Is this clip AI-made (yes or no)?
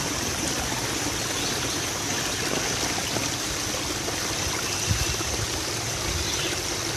no